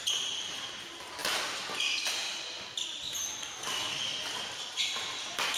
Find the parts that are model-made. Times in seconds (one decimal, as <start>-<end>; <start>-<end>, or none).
none